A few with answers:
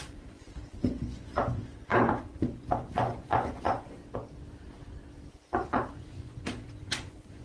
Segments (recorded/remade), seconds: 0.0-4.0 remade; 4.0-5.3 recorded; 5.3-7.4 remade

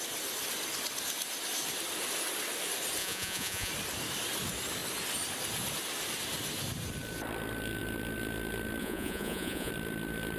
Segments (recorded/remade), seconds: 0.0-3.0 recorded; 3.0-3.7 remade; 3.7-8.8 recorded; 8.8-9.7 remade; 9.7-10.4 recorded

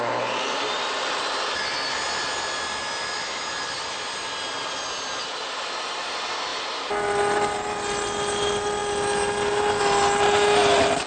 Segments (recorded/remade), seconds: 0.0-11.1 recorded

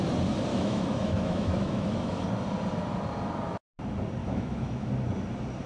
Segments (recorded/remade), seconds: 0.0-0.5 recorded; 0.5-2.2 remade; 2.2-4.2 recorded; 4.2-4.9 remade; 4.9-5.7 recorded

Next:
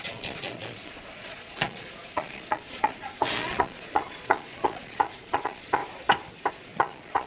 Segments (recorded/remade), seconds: 0.0-5.8 remade; 5.8-6.5 recorded; 6.5-7.3 remade

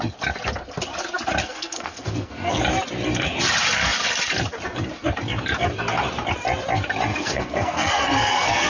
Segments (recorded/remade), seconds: 0.0-1.4 recorded; 1.4-2.6 remade; 2.6-7.1 recorded; 7.1-8.7 remade

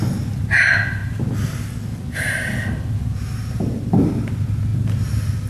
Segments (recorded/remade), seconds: 0.0-5.5 recorded